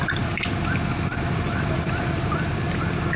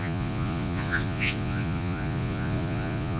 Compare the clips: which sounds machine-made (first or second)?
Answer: second